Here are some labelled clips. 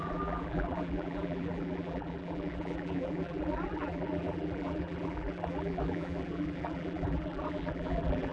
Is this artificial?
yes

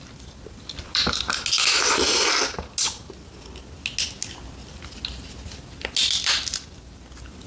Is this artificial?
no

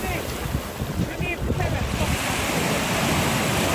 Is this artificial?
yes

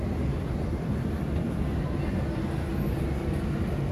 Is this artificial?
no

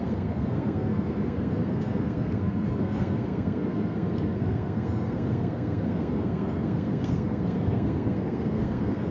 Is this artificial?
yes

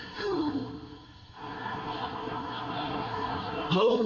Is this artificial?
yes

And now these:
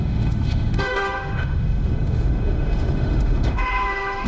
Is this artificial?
yes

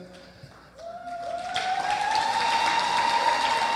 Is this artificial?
no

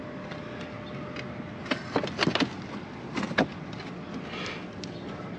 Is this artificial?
no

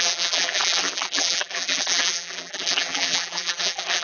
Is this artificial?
yes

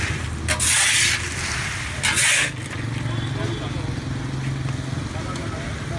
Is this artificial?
no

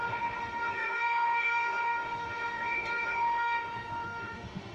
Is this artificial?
yes